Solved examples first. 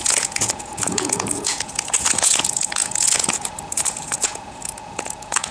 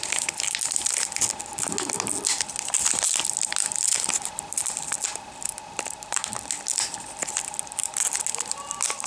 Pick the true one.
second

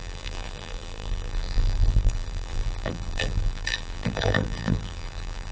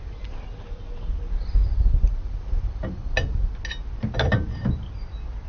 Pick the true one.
second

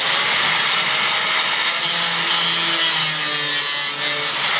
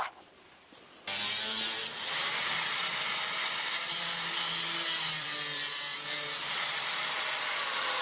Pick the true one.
first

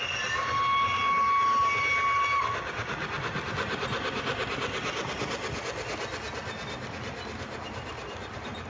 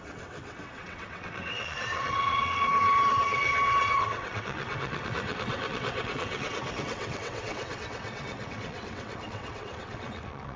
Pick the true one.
first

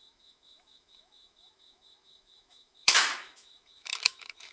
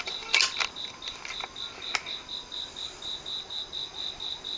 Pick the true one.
second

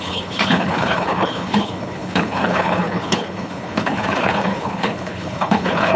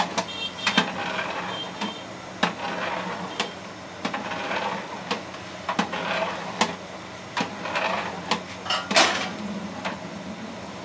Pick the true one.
second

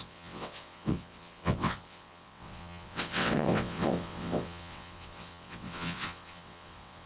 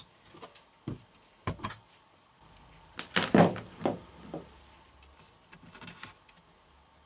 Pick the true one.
second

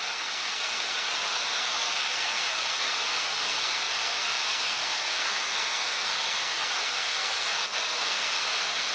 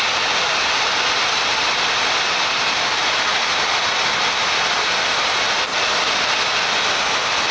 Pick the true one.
second